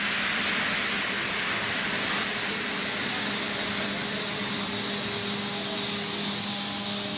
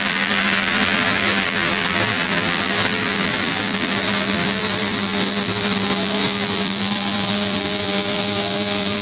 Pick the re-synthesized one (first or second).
second